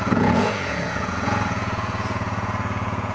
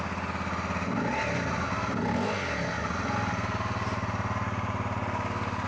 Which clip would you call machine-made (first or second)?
first